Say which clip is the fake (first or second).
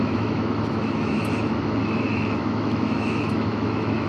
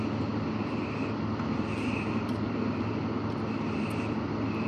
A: first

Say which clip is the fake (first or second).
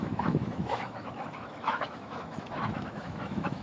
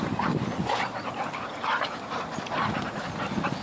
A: first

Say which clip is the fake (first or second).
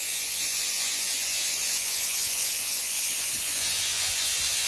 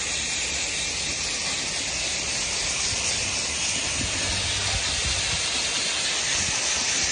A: first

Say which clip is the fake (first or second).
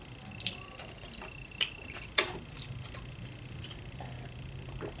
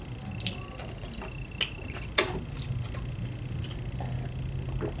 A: first